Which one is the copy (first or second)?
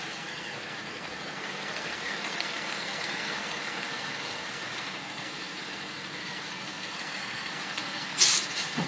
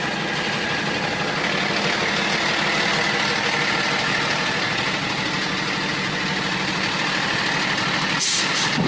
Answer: first